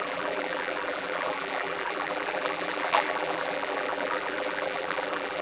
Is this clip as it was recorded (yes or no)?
no